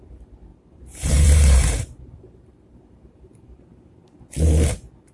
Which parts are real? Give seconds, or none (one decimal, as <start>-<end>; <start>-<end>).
0.0-0.5; 3.6-5.1